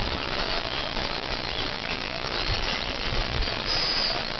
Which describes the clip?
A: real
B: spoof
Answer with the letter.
B